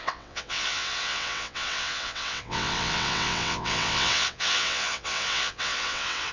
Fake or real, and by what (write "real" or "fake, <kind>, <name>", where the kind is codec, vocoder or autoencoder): fake, vocoder, WaveNeXt